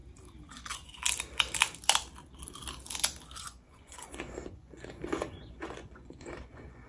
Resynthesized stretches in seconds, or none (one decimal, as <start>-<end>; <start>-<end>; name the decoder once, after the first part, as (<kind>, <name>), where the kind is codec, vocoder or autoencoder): 0.5-1.0 (vocoder, Vocos); 3.4-6.9